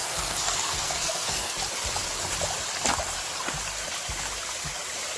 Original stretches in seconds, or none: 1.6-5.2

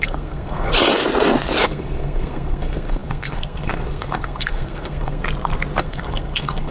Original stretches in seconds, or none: 0.7-1.6; 5.2-5.8

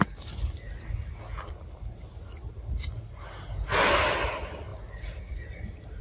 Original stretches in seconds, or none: 0.0-6.0

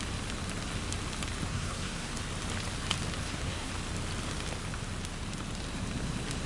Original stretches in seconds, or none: 0.0-1.5; 2.2-3.2; 3.7-6.5

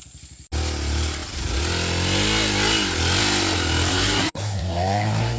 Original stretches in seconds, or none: 0.0-3.9

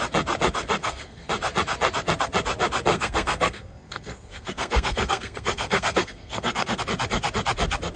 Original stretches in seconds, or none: 0.0-0.8; 1.3-2.9; 6.8-8.0

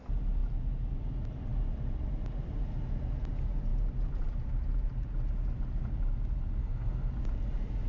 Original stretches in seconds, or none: 0.0-6.6; 7.1-7.9